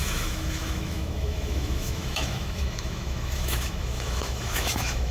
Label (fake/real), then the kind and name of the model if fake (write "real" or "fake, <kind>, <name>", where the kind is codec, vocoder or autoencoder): fake, autoencoder, DAC-VAE